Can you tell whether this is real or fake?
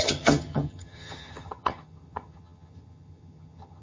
fake